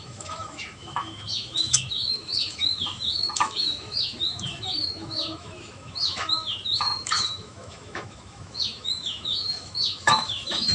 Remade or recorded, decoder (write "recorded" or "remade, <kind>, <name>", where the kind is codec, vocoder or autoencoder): remade, autoencoder, DAC-VAE